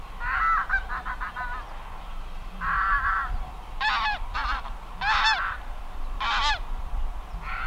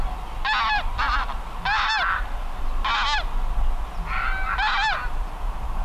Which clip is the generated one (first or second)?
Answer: first